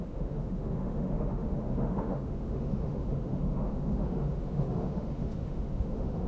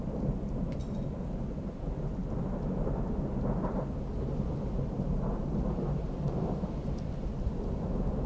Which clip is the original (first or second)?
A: second